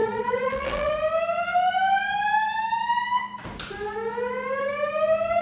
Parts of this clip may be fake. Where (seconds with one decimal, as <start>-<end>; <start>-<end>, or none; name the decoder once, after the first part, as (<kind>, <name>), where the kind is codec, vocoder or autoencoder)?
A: 0.0-0.9 (vocoder, Vocos)

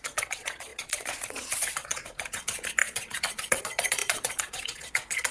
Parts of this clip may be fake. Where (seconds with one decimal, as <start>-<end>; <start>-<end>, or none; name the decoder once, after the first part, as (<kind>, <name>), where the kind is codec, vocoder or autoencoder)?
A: 0.0-5.3 (vocoder, Vocos)

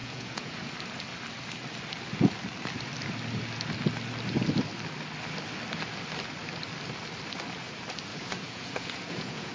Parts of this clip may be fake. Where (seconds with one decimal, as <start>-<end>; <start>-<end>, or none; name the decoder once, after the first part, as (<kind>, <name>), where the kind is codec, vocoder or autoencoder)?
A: 0.0-0.7 (vocoder, Vocos); 8.1-9.5

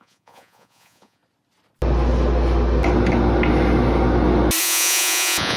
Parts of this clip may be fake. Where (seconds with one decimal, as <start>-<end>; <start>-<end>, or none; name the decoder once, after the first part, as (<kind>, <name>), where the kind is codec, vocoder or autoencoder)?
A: 0.0-1.2 (vocoder, Vocos); 4.6-5.6

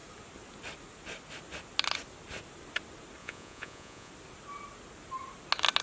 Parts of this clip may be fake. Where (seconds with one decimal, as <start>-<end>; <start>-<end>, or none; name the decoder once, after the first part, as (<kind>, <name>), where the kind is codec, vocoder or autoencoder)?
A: 3.2-4.1 (vocoder, Vocos)

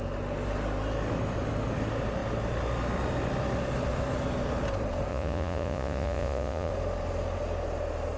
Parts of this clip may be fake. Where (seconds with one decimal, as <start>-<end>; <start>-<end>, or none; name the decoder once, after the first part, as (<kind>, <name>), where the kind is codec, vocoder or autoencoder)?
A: 5.1-6.7 (vocoder, Vocos)